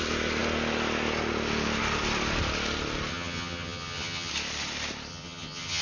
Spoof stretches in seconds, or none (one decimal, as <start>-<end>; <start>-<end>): 3.1-4.3; 5.1-5.8